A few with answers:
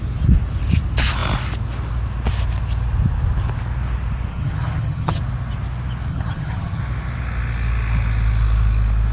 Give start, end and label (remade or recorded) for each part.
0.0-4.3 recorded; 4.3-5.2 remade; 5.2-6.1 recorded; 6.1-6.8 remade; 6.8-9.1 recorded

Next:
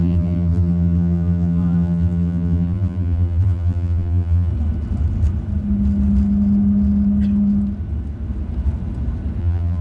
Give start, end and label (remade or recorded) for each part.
0.0-4.5 remade; 4.5-9.4 recorded; 9.4-9.8 remade

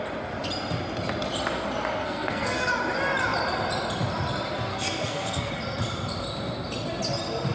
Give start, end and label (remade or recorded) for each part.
0.0-2.0 recorded; 2.0-2.7 remade; 2.7-4.7 recorded; 4.7-5.5 remade; 5.5-7.5 recorded

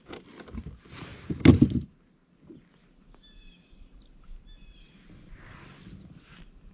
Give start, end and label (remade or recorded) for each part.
0.0-6.7 recorded